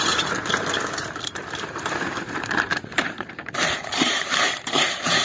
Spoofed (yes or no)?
yes